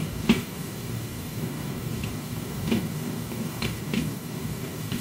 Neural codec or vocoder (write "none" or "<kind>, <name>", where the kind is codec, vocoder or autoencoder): codec, DAC